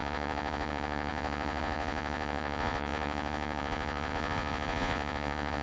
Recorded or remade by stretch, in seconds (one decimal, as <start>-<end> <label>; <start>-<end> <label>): 0.0-5.6 remade